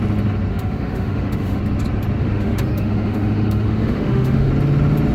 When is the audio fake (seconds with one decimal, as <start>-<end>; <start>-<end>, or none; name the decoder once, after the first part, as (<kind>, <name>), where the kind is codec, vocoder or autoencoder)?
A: 0.5-1.6 (autoencoder, DAC-VAE); 2.2-4.5